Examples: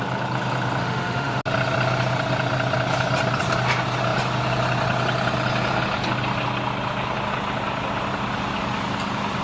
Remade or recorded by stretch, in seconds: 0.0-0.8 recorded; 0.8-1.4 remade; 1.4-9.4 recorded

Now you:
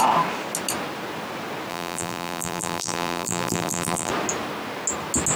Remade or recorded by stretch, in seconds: 0.0-1.7 recorded; 1.7-4.1 remade; 4.1-5.4 recorded